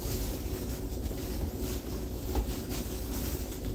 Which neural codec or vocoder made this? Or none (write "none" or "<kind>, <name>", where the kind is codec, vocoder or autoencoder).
codec, DAC